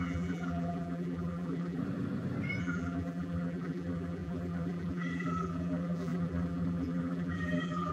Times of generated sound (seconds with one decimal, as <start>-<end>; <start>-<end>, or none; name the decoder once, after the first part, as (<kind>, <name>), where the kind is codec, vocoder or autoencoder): 0.0-1.8 (vocoder, BigVGAN v2); 2.6-7.9